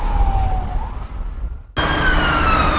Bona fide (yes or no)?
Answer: yes